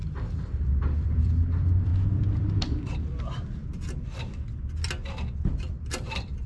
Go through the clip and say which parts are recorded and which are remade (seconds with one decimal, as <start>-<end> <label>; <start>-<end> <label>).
0.0-1.9 remade; 1.9-5.5 recorded; 5.5-6.5 remade